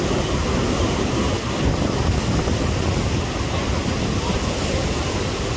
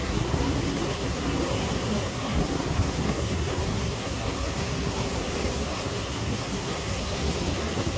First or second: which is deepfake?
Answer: second